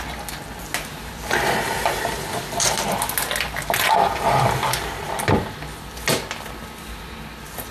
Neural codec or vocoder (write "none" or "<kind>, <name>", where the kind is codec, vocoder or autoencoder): none